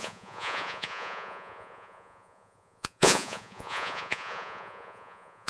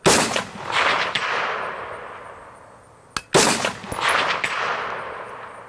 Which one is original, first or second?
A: second